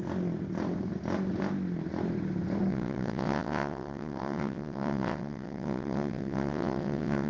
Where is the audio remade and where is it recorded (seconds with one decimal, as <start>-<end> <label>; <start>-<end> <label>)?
0.0-2.7 recorded; 2.7-7.3 remade